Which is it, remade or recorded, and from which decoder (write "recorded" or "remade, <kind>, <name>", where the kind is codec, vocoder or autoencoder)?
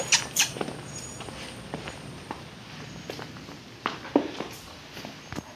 recorded